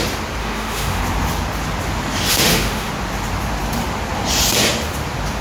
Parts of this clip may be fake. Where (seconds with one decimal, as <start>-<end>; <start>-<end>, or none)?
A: 0.4-1.0; 2.3-2.9